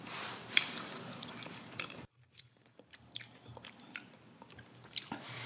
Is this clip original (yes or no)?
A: no